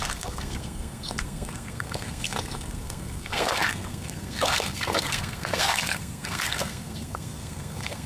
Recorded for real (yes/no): no